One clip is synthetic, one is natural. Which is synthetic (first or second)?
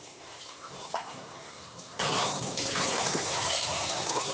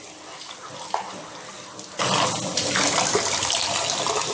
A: first